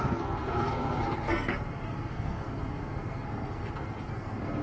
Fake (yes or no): yes